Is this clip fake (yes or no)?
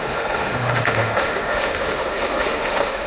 yes